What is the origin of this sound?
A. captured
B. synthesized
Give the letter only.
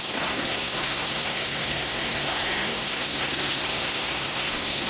B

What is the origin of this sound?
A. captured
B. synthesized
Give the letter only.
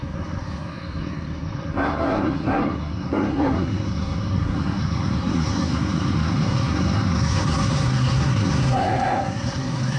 B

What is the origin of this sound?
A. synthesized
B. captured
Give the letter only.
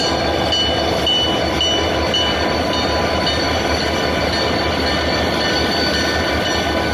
B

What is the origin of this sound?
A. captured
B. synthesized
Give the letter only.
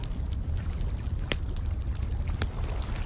A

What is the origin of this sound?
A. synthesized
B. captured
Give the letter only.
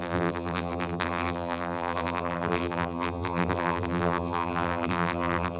A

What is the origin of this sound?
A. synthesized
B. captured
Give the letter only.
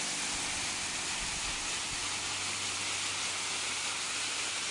B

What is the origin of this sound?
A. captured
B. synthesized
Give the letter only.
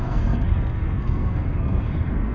B